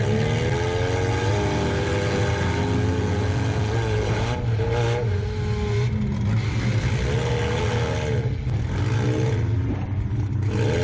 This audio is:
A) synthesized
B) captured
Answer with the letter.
B